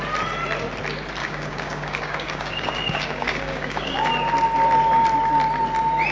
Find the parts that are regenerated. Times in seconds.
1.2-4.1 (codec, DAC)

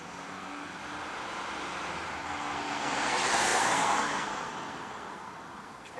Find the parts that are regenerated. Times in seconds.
0.0-0.8 (codec, SNAC); 2.2-6.0